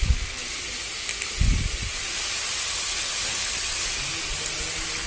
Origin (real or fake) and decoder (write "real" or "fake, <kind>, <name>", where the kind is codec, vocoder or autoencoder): real